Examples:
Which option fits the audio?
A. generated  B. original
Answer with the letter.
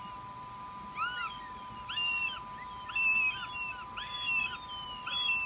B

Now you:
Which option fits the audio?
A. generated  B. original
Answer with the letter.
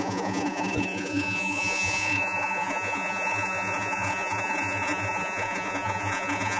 A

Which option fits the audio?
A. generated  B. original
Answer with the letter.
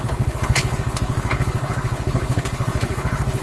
A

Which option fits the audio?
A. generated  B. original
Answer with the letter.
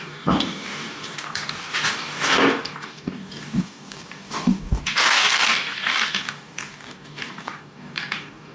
A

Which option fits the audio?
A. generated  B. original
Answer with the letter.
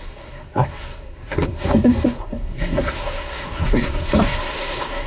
A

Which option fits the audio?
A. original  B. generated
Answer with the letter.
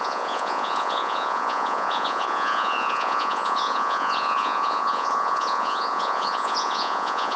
B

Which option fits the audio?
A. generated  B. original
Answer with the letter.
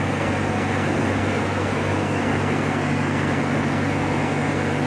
A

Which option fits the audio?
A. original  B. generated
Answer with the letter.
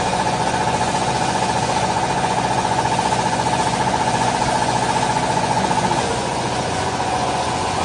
B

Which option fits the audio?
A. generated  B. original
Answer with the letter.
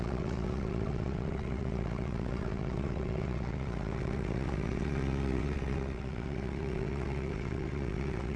A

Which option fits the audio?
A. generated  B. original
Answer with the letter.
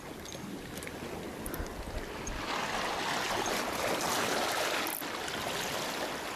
B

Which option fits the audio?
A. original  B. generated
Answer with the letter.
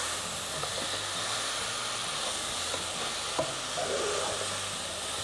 A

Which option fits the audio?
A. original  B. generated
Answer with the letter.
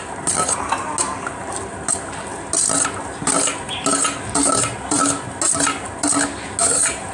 A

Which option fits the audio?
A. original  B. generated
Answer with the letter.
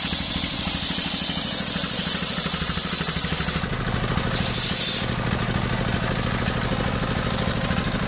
A